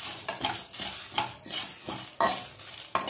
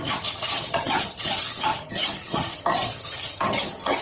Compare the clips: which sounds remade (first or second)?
second